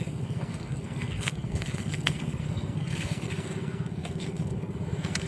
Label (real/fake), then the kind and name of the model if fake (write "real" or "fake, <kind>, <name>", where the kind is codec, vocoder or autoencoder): fake, codec, SNAC